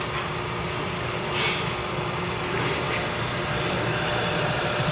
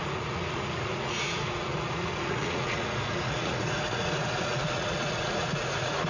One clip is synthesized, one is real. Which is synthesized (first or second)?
second